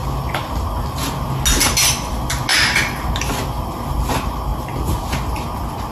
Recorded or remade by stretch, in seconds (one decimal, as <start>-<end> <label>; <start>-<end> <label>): 0.0-5.9 recorded